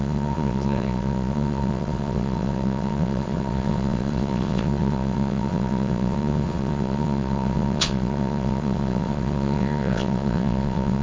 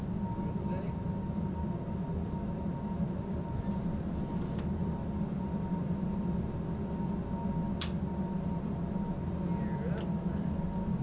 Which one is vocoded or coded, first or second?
first